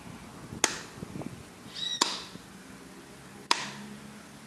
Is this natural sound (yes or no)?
yes